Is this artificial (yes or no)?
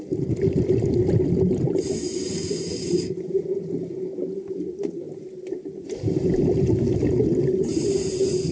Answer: no